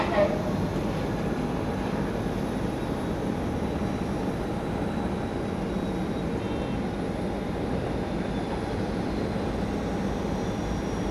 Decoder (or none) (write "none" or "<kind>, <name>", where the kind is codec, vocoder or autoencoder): none